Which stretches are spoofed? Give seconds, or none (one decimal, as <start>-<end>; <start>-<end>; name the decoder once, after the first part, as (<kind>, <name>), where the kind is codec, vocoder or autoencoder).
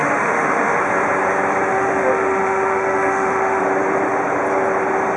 0.0-0.8 (autoencoder, DAC-VAE); 1.7-3.6